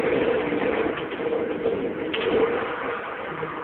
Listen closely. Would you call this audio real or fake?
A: real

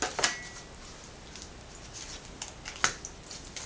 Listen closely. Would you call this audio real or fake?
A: real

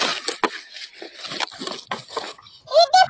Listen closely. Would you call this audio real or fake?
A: real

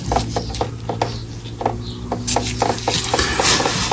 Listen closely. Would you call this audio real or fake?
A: real